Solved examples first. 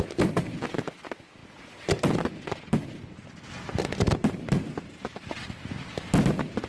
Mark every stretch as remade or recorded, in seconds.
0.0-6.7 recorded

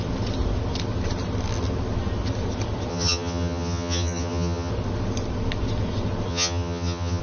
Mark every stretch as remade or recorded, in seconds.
0.0-2.9 recorded; 2.9-4.7 remade; 4.7-6.3 recorded; 6.3-7.2 remade

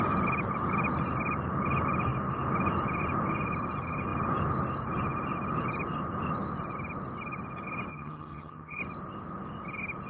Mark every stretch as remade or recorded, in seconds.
0.0-7.9 recorded; 7.9-8.8 remade; 8.8-10.1 recorded

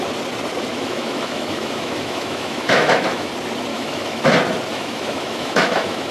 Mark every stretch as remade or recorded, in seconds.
0.0-0.7 recorded; 0.7-3.3 remade; 3.3-3.7 recorded; 3.7-4.2 remade; 4.2-4.7 recorded; 4.7-6.1 remade